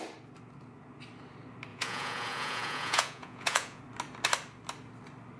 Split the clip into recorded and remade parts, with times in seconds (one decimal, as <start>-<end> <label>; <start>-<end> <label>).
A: 0.0-1.7 recorded; 1.7-3.8 remade; 3.8-5.4 recorded